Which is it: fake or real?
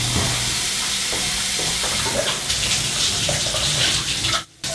real